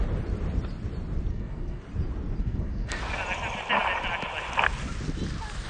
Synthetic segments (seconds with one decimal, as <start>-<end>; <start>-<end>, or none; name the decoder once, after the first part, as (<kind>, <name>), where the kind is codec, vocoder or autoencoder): 1.3-1.8 (codec, SNAC); 2.4-3.0